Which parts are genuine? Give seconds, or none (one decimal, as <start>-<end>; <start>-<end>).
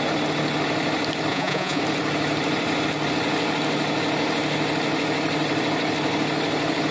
0.0-1.3; 1.8-6.9